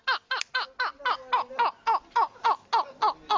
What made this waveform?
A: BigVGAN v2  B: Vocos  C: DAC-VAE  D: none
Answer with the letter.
D